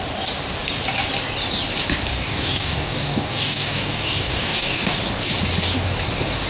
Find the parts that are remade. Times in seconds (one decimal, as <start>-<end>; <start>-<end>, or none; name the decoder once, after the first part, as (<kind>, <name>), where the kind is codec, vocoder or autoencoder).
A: 2.1-5.0 (codec, DAC)